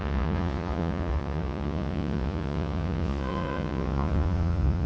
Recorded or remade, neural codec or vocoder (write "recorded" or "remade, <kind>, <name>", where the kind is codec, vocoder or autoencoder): remade, vocoder, Vocos